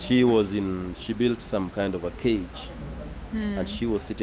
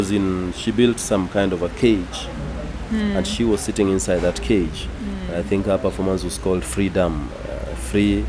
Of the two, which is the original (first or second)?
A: second